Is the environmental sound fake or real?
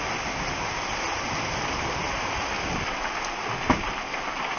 real